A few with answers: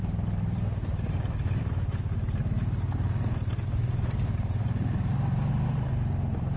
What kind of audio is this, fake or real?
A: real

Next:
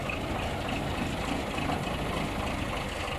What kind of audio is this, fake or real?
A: real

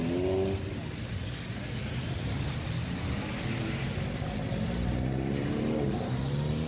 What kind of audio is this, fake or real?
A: real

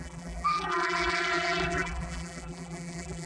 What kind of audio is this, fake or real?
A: fake